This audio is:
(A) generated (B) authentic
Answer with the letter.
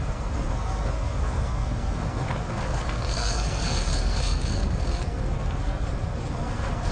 A